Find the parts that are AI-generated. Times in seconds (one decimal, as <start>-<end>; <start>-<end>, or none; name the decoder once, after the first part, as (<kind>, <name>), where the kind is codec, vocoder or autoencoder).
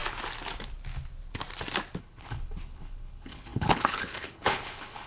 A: 2.0-5.1 (codec, HILCodec)